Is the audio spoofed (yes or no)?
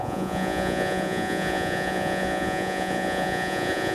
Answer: yes